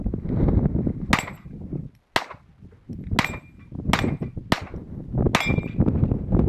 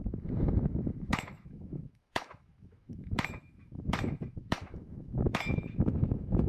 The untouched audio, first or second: first